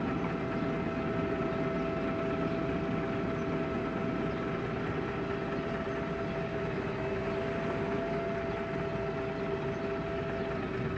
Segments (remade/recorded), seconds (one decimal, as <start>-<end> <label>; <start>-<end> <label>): 0.0-6.5 recorded; 6.5-7.2 remade; 7.2-11.0 recorded